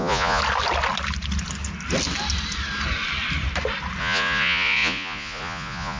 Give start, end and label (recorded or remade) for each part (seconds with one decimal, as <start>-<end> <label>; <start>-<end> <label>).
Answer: 0.0-0.4 remade; 0.4-4.0 recorded; 4.0-6.0 remade